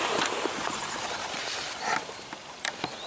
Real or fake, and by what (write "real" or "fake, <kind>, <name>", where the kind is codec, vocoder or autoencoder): fake, vocoder, BigVGAN v2